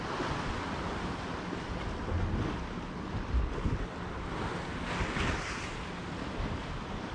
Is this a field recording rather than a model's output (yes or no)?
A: yes